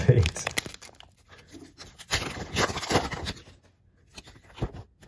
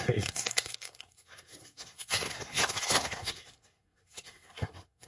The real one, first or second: first